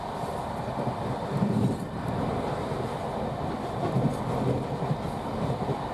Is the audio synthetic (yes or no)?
no